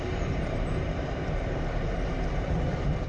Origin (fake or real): fake